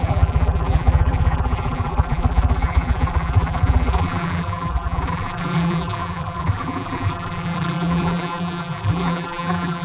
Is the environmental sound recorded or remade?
remade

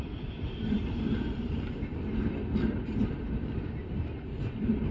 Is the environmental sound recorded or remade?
remade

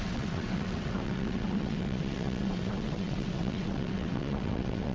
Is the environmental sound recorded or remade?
remade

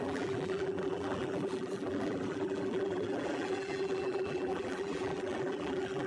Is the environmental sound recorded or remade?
remade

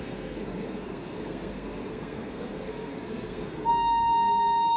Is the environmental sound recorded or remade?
remade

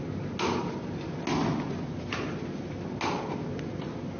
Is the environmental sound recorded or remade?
recorded